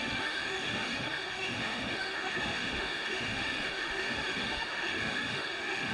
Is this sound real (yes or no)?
no